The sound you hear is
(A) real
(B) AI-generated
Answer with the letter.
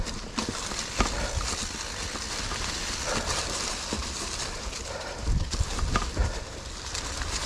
A